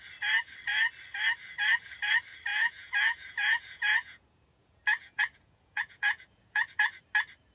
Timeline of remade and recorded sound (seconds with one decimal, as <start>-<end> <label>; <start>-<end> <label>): 0.0-2.5 recorded; 2.5-7.0 remade; 7.0-7.5 recorded